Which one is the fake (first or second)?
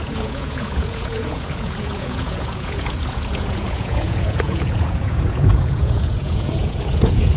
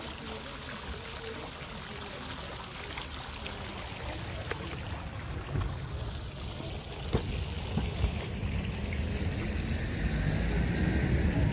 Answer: first